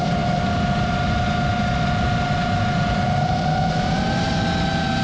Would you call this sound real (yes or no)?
no